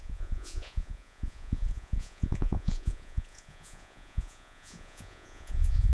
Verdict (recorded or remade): remade